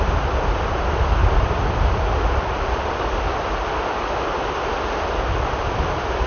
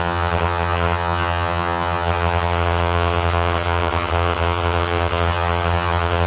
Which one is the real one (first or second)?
first